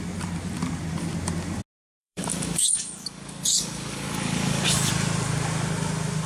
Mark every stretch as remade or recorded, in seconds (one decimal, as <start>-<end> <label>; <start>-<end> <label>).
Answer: 0.0-2.0 recorded; 2.0-4.9 remade; 4.9-6.3 recorded

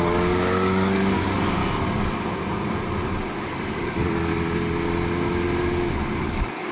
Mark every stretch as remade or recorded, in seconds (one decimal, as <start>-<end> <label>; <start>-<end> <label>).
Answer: 0.0-1.6 remade; 1.6-3.4 recorded; 3.4-4.3 remade; 4.3-6.2 recorded; 6.2-6.7 remade

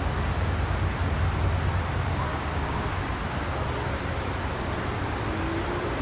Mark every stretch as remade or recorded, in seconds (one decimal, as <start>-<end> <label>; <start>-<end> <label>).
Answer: 0.0-2.3 recorded; 2.3-2.9 remade; 2.9-6.0 recorded

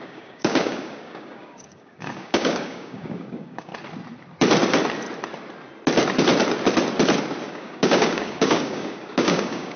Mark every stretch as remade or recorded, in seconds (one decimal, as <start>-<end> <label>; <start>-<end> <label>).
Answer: 0.0-3.7 remade; 3.7-7.5 recorded; 7.5-9.8 remade

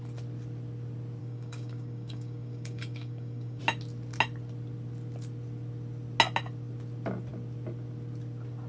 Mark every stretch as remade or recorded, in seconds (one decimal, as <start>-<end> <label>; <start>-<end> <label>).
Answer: 0.0-1.2 recorded; 1.2-3.6 remade; 3.6-8.7 recorded

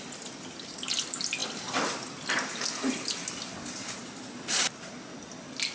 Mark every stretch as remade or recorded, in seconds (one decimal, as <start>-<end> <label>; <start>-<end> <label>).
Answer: 0.0-5.7 recorded

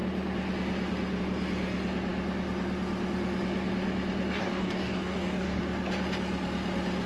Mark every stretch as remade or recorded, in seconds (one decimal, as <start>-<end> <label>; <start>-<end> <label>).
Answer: 0.0-4.4 recorded; 4.4-5.6 remade; 5.6-7.1 recorded